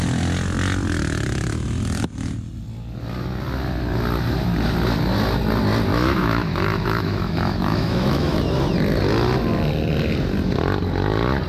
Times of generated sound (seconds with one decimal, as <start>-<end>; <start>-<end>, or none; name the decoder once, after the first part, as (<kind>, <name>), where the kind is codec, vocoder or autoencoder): 5.9-8.4 (autoencoder, DAC-VAE)

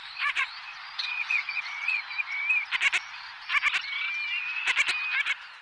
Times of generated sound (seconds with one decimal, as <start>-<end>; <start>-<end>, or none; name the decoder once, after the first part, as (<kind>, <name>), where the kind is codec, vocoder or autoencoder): 0.0-2.0 (vocoder, Vocos)

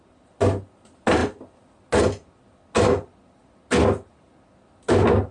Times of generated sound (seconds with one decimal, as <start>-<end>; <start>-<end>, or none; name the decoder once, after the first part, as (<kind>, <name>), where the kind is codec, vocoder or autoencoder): none